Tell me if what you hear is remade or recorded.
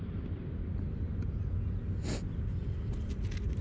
recorded